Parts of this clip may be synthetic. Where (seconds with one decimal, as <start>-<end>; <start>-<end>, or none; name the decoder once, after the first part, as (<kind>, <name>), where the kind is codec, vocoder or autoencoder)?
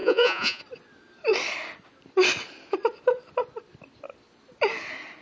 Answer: 0.0-0.6 (vocoder, Vocos)